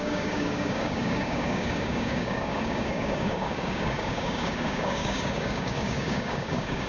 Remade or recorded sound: remade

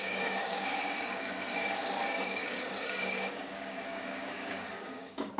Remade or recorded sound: remade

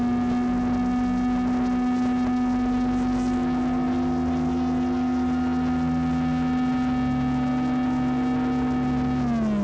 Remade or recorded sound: recorded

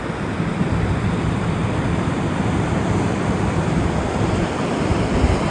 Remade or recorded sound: recorded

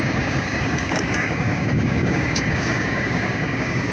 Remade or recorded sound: remade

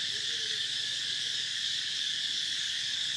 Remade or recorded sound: remade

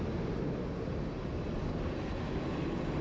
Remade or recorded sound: recorded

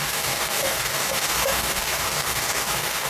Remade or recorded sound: remade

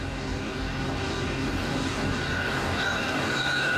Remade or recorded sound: remade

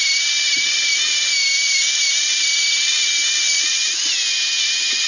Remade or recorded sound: recorded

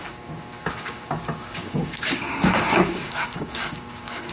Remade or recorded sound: remade